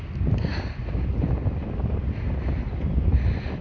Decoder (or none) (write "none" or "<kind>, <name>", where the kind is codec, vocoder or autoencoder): none